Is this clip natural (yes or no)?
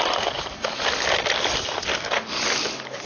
yes